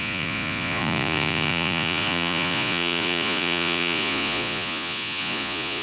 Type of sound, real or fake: fake